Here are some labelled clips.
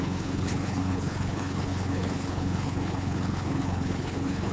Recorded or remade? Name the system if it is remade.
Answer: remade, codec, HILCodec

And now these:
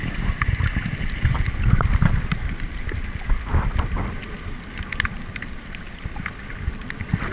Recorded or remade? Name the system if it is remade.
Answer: recorded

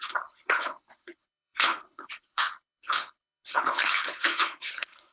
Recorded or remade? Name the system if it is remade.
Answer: remade, codec, HILCodec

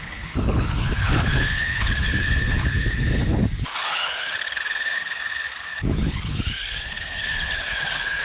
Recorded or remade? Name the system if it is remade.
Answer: remade, codec, HILCodec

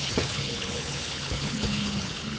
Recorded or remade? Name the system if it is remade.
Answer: remade, codec, HILCodec